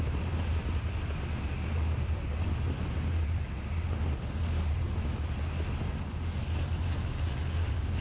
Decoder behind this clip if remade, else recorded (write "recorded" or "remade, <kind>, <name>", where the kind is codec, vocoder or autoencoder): recorded